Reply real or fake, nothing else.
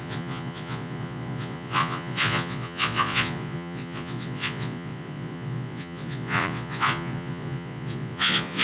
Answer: fake